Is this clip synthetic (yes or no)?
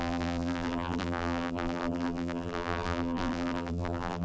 yes